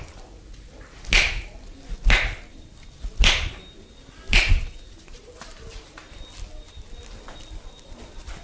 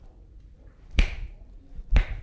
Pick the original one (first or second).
first